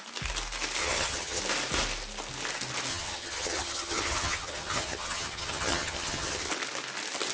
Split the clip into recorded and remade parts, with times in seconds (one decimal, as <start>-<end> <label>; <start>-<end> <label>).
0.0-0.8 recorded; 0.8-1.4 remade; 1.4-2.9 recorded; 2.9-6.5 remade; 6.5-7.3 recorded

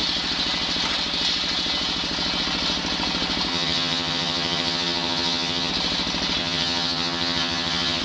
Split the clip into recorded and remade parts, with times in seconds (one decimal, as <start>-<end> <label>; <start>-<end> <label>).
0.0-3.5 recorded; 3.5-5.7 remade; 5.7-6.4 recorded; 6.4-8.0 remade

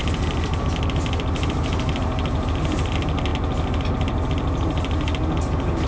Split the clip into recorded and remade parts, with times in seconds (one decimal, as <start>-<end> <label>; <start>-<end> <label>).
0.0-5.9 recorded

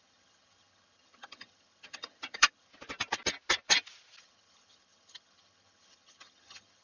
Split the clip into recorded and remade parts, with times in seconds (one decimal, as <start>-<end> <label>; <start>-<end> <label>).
0.0-2.7 remade; 2.7-4.2 recorded; 4.2-6.8 remade

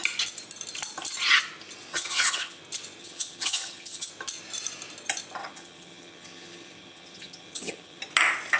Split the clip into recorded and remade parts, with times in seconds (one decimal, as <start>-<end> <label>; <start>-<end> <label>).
0.0-1.9 recorded; 1.9-2.6 remade; 2.6-3.0 recorded; 3.0-4.1 remade; 4.1-5.4 recorded; 5.4-8.0 remade; 8.0-8.6 recorded

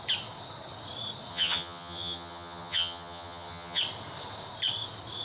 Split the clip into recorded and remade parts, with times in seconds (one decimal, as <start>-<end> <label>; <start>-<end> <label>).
0.0-1.3 recorded; 1.3-3.8 remade; 3.8-5.2 recorded

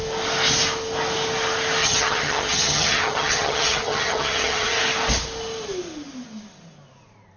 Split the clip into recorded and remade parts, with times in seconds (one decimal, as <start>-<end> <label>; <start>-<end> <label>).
0.0-1.8 recorded; 1.8-4.8 remade; 4.8-7.4 recorded